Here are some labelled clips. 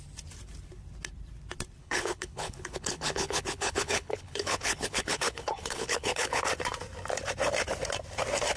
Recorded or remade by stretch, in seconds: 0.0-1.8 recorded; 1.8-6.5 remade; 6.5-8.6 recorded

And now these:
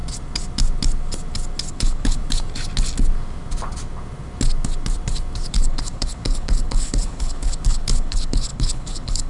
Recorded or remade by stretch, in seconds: 0.0-1.7 recorded; 1.7-2.2 remade; 2.2-5.5 recorded; 5.5-9.3 remade